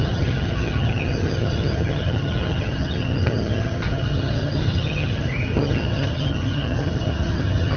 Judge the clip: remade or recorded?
remade